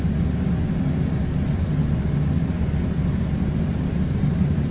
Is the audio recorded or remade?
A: recorded